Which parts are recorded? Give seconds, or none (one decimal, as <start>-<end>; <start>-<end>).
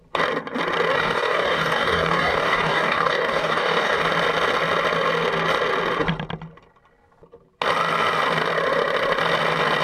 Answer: 0.0-0.9; 4.0-9.8